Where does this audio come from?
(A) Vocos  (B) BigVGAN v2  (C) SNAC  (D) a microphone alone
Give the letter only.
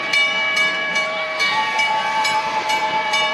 B